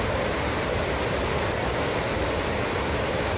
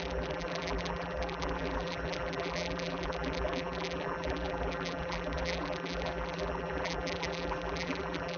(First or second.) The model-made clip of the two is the second